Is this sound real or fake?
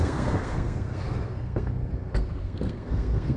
fake